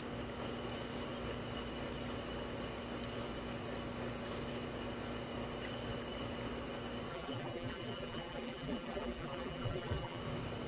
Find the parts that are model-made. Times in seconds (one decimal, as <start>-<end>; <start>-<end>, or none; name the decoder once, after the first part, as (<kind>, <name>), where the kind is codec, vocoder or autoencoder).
7.1-10.2 (vocoder, BigVGAN v2)

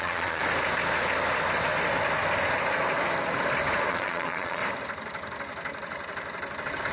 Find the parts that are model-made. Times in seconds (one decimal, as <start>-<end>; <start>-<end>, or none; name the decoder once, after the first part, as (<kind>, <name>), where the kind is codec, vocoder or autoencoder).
0.0-0.4 (vocoder, Vocos); 3.9-4.6

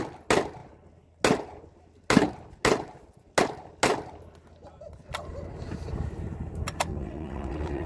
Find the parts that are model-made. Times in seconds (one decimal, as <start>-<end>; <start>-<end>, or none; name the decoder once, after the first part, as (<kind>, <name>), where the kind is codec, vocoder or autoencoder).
6.9-7.9 (vocoder, WaveNeXt)